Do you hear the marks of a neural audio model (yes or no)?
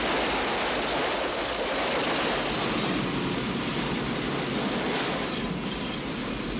no